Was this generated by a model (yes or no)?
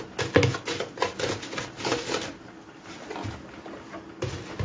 no